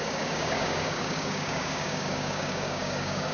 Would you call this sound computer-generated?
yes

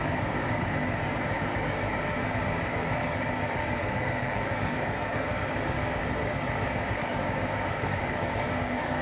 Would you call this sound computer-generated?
yes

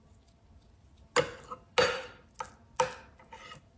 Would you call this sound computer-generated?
no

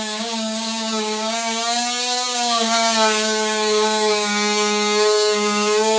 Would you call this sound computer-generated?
yes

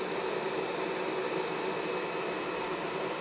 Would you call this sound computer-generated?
no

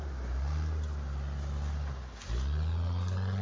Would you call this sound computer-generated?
no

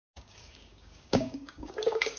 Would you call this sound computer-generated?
yes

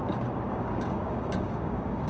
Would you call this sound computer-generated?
yes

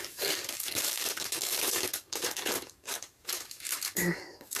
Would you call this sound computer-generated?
yes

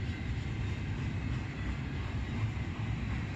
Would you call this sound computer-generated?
no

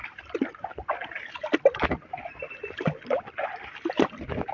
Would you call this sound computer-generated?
no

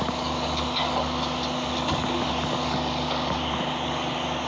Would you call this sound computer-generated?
yes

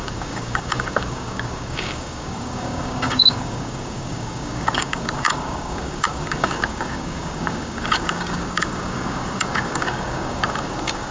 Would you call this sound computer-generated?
yes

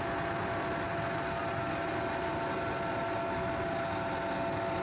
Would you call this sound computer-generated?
no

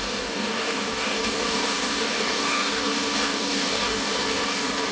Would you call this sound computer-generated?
yes